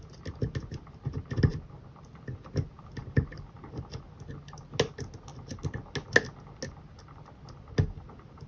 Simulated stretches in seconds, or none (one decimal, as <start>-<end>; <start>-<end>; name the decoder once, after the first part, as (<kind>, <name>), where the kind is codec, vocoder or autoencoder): none